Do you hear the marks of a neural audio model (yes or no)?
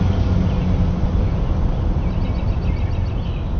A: no